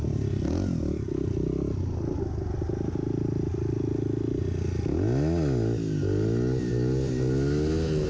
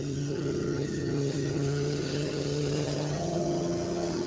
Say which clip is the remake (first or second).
second